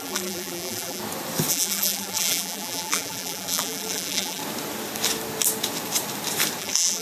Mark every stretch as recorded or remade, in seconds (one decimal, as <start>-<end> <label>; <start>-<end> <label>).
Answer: 0.0-1.0 remade; 1.0-1.5 recorded; 1.5-4.4 remade; 4.4-6.6 recorded; 6.6-7.0 remade